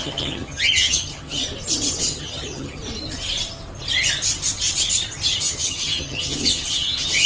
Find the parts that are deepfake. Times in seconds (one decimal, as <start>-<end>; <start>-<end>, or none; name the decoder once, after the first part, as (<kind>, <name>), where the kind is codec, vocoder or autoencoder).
0.0-1.4 (vocoder, HiFi-GAN); 2.0-2.8; 5.4-7.3